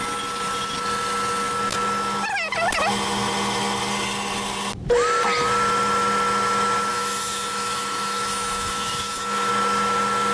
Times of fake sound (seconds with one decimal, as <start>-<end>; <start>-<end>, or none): 6.9-9.5